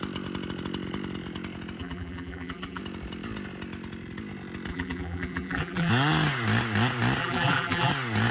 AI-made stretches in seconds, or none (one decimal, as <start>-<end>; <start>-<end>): 1.8-2.8; 4.7-5.9; 7.2-7.9